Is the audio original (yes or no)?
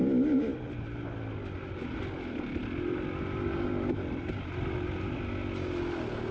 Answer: yes